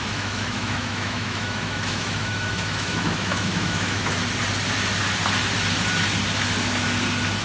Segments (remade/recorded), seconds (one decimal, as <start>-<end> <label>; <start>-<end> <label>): 0.0-4.2 remade; 4.2-7.4 recorded